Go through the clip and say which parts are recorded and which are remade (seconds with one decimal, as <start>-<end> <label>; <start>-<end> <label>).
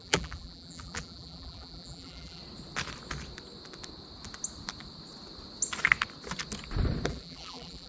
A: 0.0-2.4 remade; 2.4-7.1 recorded; 7.1-7.9 remade